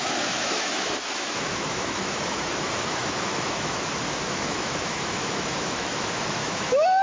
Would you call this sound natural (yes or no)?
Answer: no